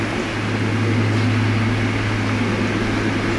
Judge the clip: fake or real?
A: real